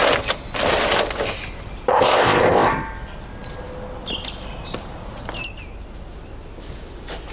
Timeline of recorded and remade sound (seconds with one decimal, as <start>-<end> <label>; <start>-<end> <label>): 0.0-1.9 recorded; 1.9-2.7 remade; 2.7-7.3 recorded